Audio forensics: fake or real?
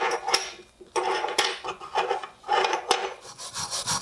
fake